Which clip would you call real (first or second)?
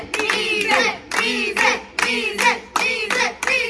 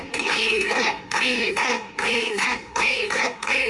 first